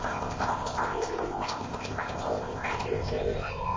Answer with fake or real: fake